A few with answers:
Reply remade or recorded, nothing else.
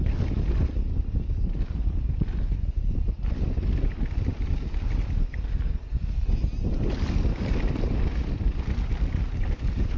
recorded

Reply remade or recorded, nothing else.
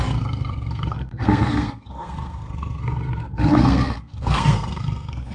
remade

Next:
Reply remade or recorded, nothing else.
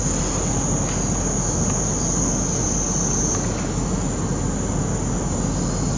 recorded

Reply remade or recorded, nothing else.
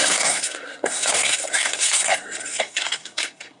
remade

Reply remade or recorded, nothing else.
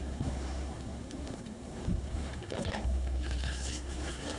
remade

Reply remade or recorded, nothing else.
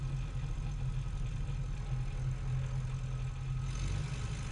recorded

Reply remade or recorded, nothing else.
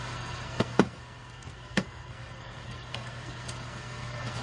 remade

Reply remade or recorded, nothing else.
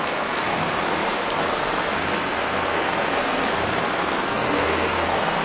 remade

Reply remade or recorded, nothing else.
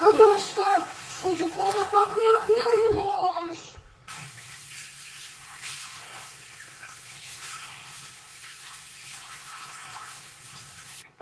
remade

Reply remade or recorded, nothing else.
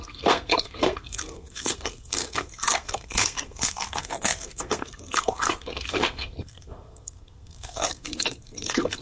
remade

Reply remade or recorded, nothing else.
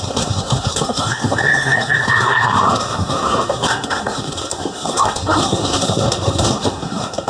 remade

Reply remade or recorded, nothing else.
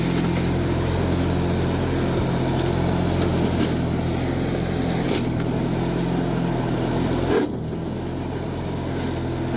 recorded